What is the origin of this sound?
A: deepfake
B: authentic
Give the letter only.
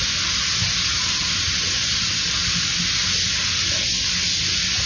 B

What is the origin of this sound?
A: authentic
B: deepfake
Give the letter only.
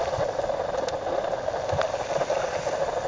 A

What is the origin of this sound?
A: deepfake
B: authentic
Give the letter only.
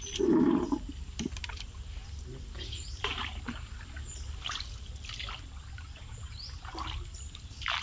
B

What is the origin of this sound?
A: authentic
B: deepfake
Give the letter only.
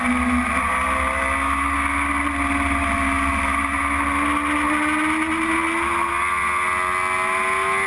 A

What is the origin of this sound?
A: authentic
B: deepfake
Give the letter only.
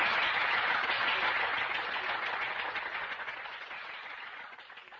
B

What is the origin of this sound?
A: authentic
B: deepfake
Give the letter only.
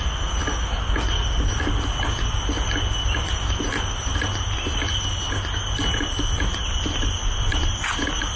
A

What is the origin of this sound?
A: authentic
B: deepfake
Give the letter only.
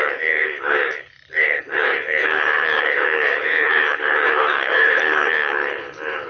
B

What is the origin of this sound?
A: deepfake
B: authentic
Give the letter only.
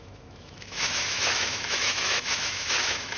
A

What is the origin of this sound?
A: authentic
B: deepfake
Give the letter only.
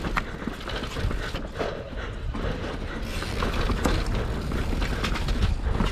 A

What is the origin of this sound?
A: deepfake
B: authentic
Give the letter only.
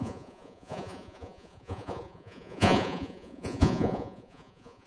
A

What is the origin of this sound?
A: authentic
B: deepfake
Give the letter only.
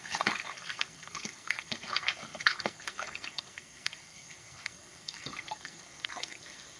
B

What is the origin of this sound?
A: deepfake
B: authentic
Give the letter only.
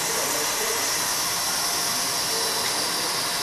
B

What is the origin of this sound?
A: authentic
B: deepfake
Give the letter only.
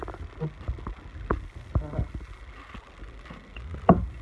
A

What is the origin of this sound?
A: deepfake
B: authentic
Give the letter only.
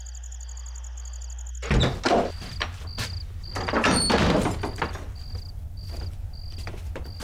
B